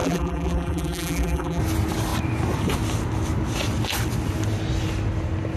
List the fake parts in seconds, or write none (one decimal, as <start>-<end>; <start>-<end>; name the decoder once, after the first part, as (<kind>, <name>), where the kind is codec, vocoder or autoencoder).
0.0-1.6 (vocoder, BigVGAN v2)